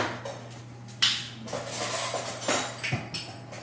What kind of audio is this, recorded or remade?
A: recorded